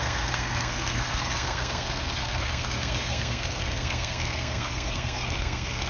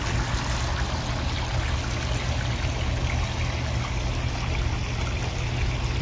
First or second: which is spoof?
first